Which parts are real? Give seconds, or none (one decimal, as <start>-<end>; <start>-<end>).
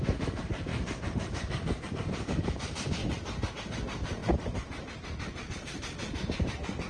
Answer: 3.0-3.5